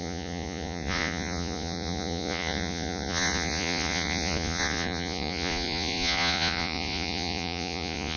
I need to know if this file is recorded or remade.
remade